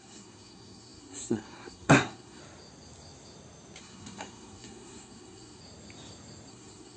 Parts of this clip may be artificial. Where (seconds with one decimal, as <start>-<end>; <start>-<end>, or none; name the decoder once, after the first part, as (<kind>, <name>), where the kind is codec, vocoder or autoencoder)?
0.0-2.4 (codec, SNAC); 3.8-5.6; 6.5-7.0